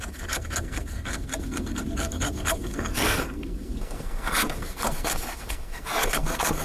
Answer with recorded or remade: remade